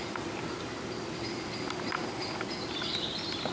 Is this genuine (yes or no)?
yes